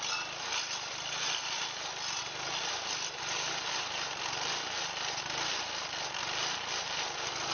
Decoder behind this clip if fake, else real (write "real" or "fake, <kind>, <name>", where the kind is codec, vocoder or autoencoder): fake, vocoder, BigVGAN v2